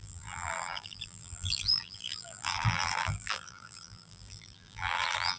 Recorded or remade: remade